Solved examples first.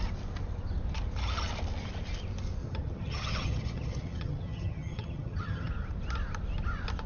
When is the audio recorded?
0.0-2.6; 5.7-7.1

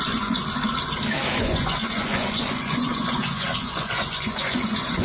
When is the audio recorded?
0.4-1.4

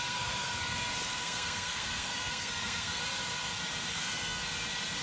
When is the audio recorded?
3.0-3.9; 4.4-5.0

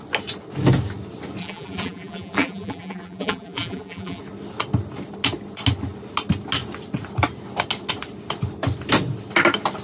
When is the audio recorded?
0.0-1.4; 4.2-9.8

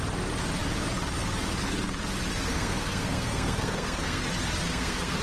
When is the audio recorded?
0.0-2.5; 4.2-4.7

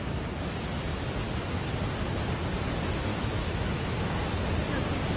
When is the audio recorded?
0.0-3.1; 4.2-5.2

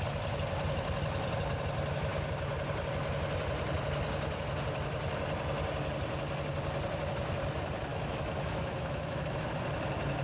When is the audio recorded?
0.0-7.9; 9.5-10.2